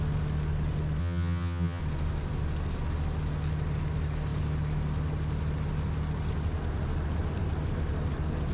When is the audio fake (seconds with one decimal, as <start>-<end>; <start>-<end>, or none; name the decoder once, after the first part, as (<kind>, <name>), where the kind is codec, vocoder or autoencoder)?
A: 1.0-1.8 (vocoder, HiFi-GAN)